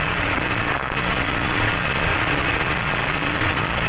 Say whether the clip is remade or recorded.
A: remade